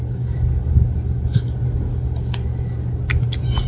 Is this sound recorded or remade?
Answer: recorded